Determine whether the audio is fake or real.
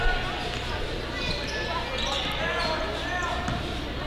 real